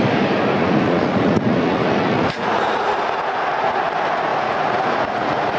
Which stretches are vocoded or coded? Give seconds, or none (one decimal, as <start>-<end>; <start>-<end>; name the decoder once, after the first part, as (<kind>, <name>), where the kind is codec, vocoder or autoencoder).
0.6-3.8 (vocoder, Vocos); 4.3-5.6